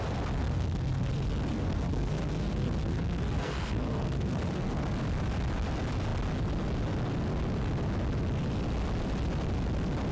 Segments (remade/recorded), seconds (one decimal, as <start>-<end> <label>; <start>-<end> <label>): 0.0-0.4 recorded; 0.4-1.1 remade; 1.1-1.5 recorded; 1.5-4.9 remade; 4.9-10.1 recorded